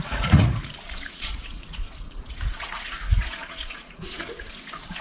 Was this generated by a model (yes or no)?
yes